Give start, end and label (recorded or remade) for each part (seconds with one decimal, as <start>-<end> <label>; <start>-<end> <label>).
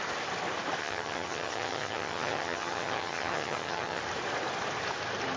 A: 0.0-0.8 recorded; 0.8-4.0 remade; 4.0-5.4 recorded